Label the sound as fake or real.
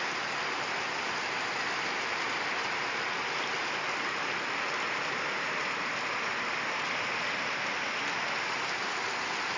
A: real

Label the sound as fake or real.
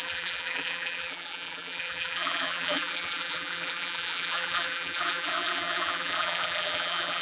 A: fake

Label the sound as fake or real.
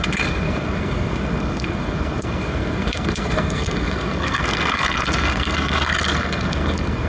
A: fake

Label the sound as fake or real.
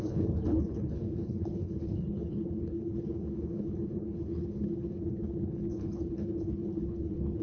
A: fake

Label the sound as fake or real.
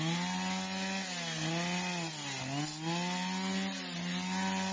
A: real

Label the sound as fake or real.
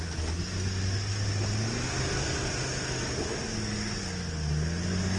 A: real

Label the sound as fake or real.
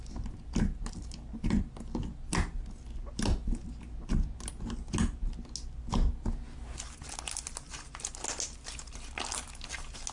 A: real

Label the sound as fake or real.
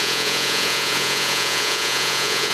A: fake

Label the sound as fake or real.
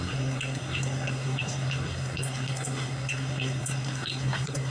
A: fake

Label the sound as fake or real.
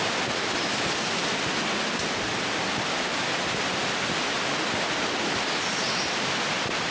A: real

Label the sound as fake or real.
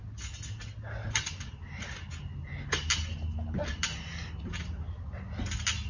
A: real